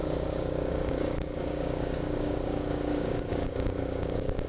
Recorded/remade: remade